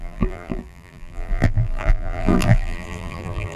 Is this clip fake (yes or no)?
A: yes